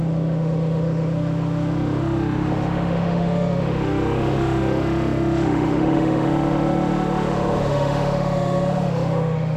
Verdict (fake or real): fake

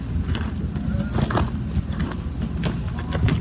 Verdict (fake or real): real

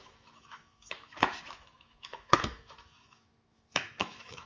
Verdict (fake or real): fake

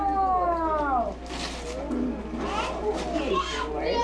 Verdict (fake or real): real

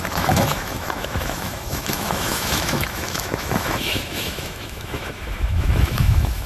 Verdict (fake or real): fake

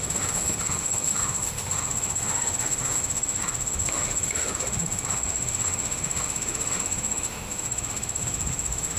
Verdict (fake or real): fake